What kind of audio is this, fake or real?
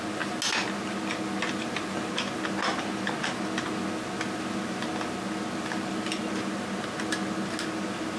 real